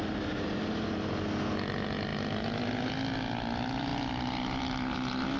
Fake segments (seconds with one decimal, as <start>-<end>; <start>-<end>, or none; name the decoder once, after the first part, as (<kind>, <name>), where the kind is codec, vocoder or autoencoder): none